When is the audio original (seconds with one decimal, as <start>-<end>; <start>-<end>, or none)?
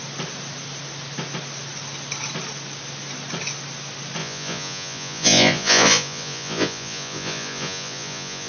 0.0-4.2